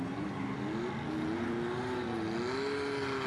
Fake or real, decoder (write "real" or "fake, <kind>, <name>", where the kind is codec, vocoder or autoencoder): real